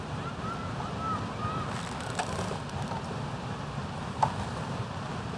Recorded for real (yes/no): yes